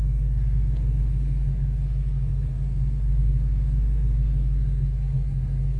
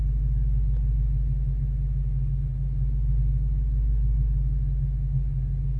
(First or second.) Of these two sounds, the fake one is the first